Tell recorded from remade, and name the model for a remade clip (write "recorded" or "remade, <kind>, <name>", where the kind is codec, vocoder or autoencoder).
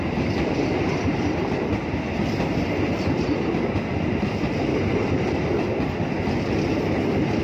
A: recorded